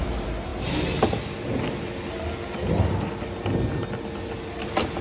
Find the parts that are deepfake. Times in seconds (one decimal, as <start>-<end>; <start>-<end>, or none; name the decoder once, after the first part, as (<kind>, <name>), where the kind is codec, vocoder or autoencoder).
none